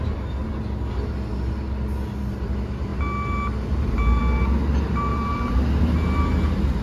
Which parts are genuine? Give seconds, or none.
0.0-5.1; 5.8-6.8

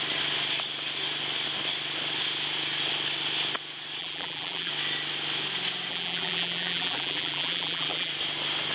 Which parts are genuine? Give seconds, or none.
0.0-4.0; 4.7-5.9; 8.1-8.7

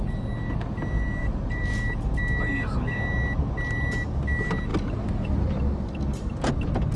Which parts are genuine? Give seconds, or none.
0.0-1.2; 1.7-7.0

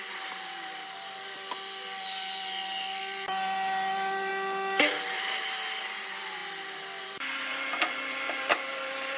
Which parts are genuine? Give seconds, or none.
4.3-5.1; 6.4-7.0

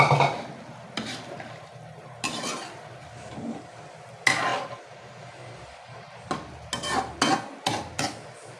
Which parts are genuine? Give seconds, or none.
0.0-4.5; 5.2-8.6